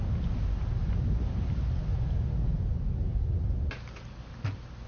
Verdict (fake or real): real